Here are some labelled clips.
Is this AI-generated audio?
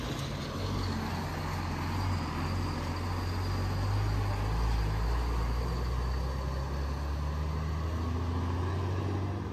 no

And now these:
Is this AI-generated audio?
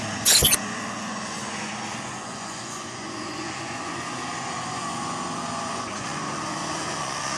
yes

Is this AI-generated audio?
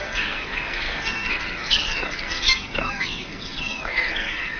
yes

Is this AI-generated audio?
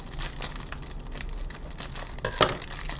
no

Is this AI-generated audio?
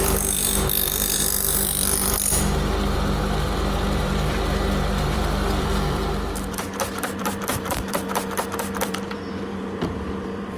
yes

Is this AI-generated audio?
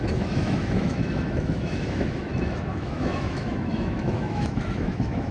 yes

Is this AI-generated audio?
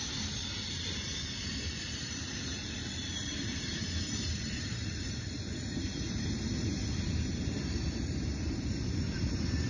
yes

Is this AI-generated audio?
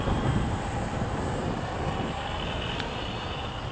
no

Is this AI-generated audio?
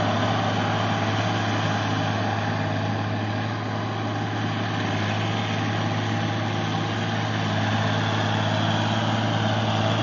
no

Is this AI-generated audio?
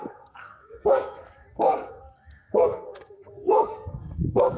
yes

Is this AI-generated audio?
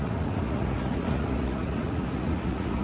yes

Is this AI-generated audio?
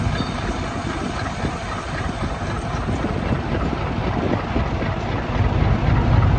no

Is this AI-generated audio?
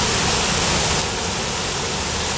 no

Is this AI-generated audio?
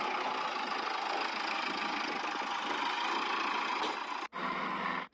no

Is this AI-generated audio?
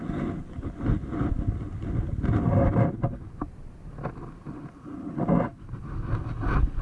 no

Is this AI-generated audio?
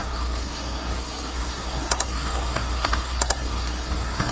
yes